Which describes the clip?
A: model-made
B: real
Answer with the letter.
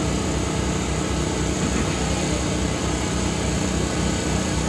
B